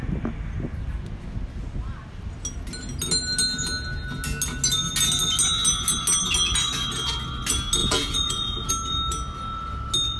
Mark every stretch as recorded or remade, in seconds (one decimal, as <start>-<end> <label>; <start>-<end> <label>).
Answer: 0.0-7.8 recorded; 7.8-8.7 remade; 8.7-10.2 recorded